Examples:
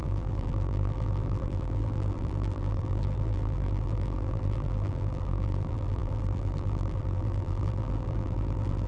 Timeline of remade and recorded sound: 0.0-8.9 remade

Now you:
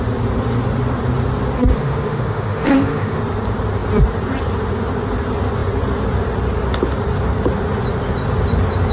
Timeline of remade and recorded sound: 0.0-1.7 recorded; 1.7-3.2 remade; 3.2-8.9 recorded

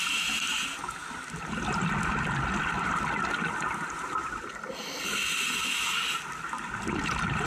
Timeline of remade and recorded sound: 0.0-7.5 recorded

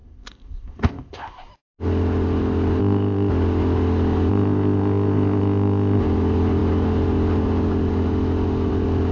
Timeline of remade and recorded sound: 0.0-1.5 remade; 1.5-2.8 recorded; 2.8-3.3 remade; 3.3-4.3 recorded; 4.3-6.0 remade; 6.0-9.1 recorded

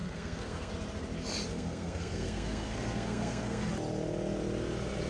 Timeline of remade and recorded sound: 0.0-0.7 remade; 0.7-1.5 recorded; 1.5-3.7 remade; 3.7-5.1 recorded